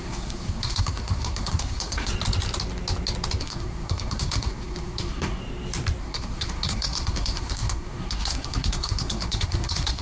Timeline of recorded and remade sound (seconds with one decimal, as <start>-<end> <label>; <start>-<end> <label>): 0.0-2.1 remade; 2.1-3.4 recorded; 3.4-5.4 remade; 5.4-6.0 recorded; 6.0-10.0 remade